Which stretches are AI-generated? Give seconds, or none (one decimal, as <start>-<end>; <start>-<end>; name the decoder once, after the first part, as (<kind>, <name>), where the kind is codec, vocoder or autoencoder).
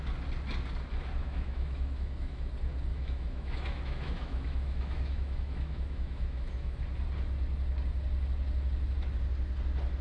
1.2-2.5 (autoencoder, DAC-VAE); 2.9-6.8